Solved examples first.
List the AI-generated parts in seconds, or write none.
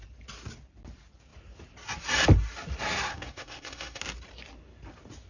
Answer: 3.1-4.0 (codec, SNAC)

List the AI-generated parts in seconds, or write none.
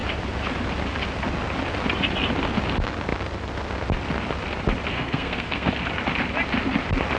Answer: 4.9-5.7 (codec, SNAC)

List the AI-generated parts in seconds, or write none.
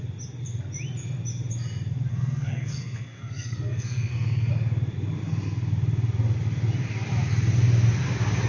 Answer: 2.1-4.5 (codec, SNAC)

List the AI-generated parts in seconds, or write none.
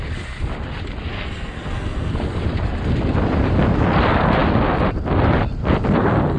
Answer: 1.1-2.1 (codec, SNAC)